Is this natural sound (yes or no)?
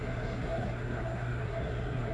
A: no